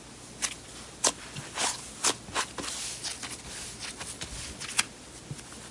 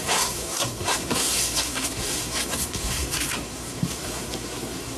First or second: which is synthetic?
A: second